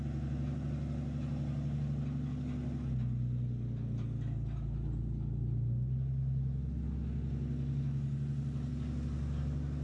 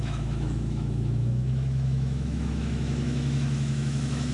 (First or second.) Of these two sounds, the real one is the first